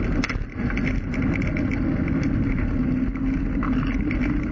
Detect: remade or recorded recorded